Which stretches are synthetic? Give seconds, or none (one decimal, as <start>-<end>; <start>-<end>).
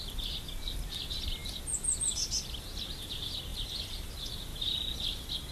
3.5-4.1